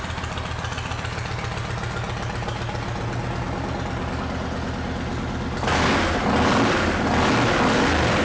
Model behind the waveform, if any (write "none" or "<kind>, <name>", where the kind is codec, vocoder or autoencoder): none